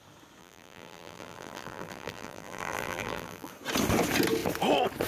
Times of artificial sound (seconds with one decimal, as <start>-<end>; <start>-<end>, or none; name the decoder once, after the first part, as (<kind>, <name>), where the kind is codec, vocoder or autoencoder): 0.4-3.5 (vocoder, BigVGAN v2)